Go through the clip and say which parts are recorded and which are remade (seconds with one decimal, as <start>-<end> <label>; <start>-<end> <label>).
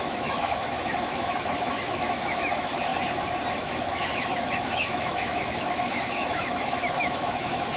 0.0-2.9 remade; 2.9-3.5 recorded; 3.5-7.8 remade